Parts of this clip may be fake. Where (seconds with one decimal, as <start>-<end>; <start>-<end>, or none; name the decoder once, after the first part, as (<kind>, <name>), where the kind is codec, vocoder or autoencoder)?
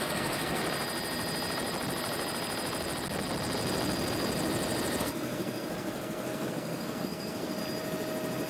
0.0-0.6 (codec, SNAC); 5.0-7.6